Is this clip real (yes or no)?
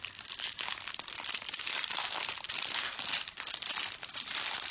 yes